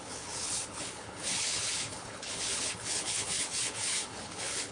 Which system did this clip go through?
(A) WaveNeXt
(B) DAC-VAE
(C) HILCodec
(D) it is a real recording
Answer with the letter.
C